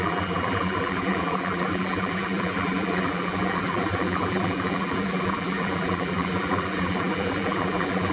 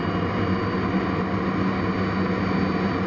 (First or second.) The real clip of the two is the second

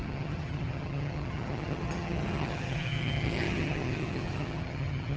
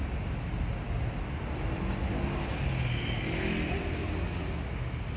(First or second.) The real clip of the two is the second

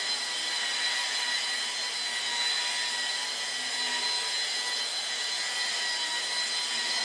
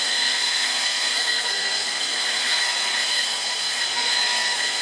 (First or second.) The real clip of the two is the first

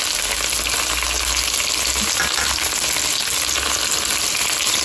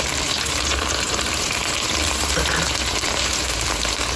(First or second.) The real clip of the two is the first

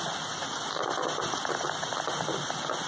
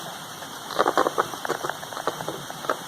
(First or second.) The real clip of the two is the first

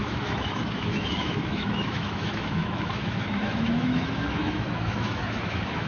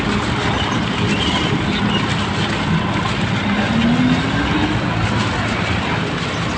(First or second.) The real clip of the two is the second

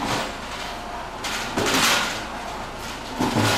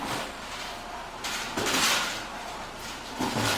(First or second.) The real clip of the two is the first